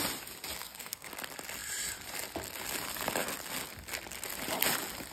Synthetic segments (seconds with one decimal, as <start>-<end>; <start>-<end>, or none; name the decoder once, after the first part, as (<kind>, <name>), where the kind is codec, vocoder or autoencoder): 0.6-1.1 (codec, SNAC)